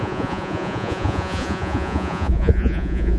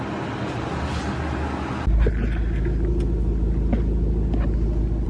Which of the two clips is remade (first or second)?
first